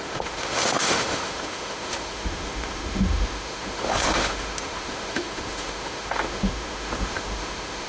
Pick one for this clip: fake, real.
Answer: fake